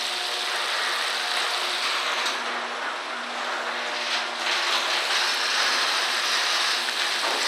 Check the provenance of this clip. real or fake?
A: real